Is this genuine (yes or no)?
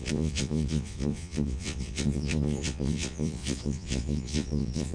no